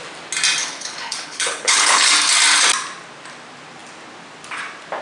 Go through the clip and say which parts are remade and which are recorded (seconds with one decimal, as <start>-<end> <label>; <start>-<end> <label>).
0.0-0.6 recorded; 0.6-2.1 remade; 2.1-5.0 recorded

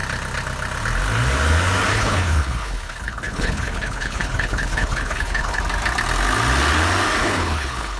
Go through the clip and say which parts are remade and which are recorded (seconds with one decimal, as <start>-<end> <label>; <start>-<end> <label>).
0.0-1.9 recorded; 1.9-5.6 remade; 5.6-7.2 recorded; 7.2-8.0 remade